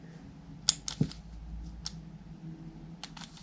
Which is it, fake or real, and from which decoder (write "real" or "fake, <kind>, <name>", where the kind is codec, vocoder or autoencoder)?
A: real